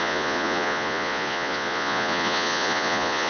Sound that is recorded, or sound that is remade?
remade